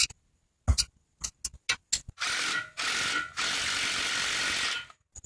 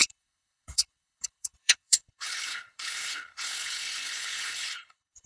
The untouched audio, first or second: first